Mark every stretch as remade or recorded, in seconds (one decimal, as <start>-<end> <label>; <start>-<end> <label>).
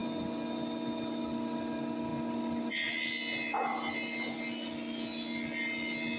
0.0-6.2 recorded